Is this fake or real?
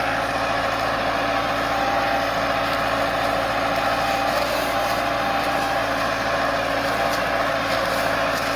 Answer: real